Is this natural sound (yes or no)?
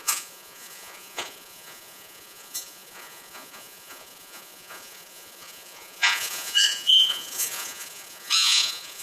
no